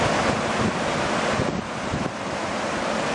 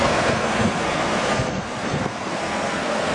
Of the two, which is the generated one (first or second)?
second